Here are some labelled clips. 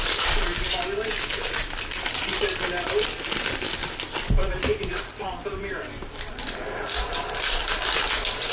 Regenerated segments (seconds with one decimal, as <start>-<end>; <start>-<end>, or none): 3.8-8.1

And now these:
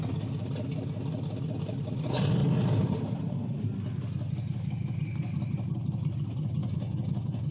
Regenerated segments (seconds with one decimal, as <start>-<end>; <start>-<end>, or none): 6.6-7.5

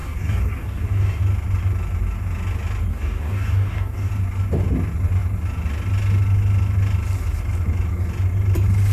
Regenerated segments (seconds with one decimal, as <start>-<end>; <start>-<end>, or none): 0.0-1.2; 2.9-4.1